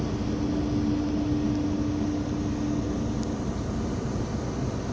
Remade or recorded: recorded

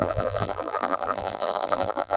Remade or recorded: remade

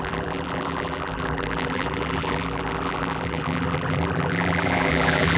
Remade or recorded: remade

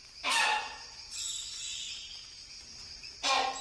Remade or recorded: recorded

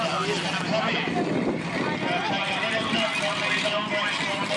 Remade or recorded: recorded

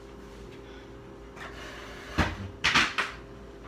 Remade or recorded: recorded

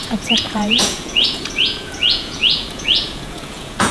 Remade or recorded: remade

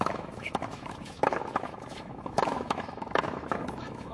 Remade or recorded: remade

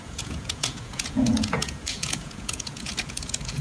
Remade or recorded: remade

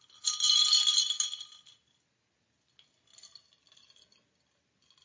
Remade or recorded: recorded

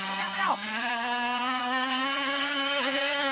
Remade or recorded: remade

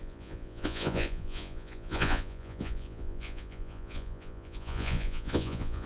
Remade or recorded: remade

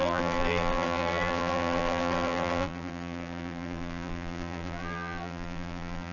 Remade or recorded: remade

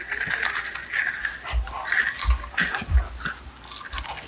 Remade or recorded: recorded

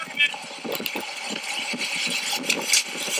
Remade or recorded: recorded